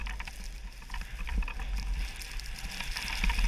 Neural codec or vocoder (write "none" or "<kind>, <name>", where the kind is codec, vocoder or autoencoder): none